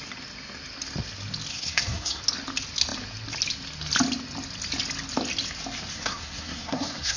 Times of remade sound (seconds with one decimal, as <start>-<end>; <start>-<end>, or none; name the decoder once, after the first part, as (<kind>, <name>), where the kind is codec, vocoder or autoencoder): 1.5-2.2 (codec, SNAC); 5.9-7.2